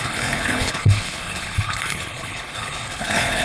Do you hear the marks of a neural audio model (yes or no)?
yes